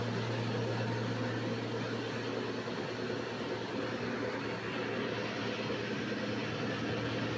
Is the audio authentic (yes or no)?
yes